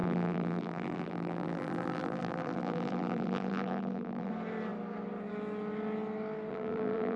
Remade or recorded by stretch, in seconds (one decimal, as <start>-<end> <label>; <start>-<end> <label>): 0.0-4.3 remade; 4.3-6.5 recorded; 6.5-7.2 remade